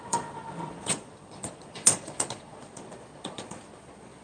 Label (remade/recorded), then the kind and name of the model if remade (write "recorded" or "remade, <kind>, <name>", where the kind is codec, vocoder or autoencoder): remade, vocoder, Vocos